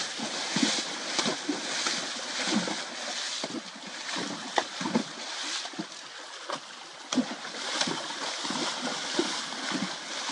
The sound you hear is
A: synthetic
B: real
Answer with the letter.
B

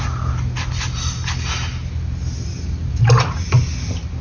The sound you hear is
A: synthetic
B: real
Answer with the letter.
B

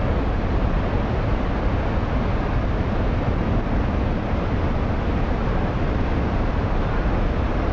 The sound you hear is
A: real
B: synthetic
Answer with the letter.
A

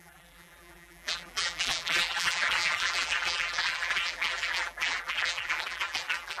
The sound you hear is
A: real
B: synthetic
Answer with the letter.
B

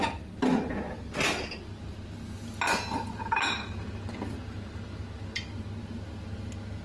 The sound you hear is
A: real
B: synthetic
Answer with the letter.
A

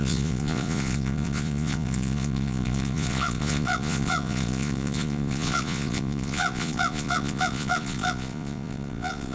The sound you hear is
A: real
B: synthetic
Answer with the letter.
B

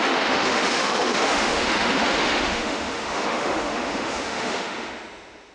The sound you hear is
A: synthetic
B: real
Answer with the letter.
A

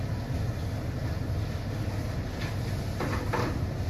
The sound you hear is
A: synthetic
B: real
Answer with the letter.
B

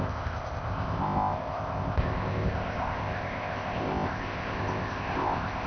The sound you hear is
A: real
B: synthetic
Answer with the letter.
B